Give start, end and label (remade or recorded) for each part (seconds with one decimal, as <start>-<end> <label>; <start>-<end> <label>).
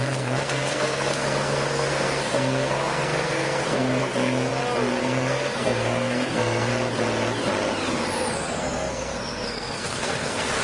0.0-4.5 remade; 4.5-5.0 recorded; 5.0-6.7 remade; 6.7-8.3 recorded; 8.3-10.6 remade